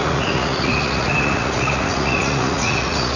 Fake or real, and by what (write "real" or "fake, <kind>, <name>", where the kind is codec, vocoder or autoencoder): fake, vocoder, Vocos